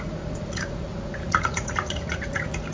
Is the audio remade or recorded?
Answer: remade